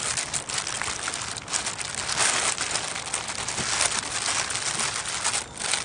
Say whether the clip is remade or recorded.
recorded